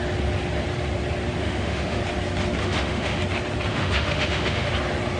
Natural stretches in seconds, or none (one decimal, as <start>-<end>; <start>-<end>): 0.0-1.4; 2.0-2.6; 3.2-3.7; 4.7-5.2